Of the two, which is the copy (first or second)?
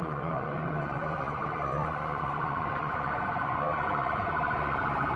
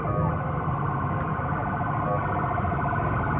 first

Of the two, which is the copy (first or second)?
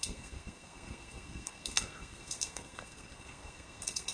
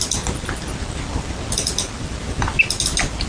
first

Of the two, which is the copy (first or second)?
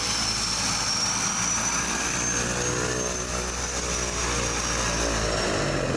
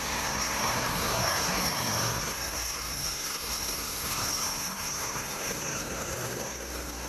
second